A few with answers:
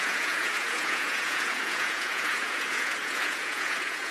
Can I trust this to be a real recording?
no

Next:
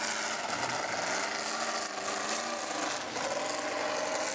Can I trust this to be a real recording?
yes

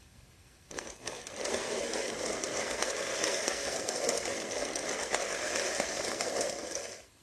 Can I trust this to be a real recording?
no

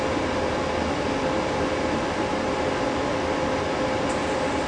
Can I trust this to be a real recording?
yes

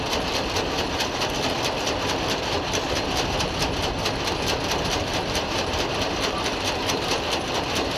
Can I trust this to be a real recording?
no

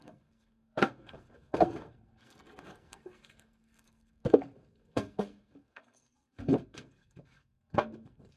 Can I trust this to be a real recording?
no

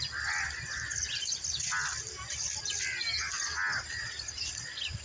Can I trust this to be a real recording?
yes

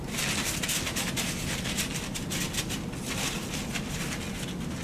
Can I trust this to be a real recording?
yes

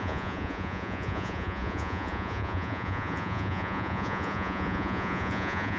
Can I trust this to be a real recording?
no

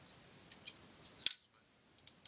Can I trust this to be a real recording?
yes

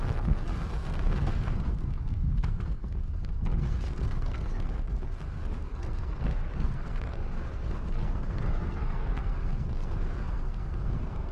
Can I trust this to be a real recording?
no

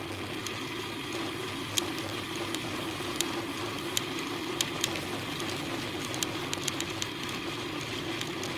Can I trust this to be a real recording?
yes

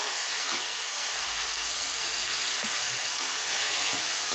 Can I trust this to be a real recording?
no